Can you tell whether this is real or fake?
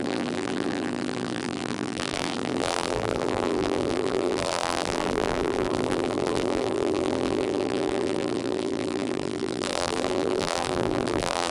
fake